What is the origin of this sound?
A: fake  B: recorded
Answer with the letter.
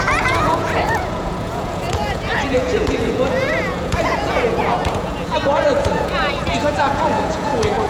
A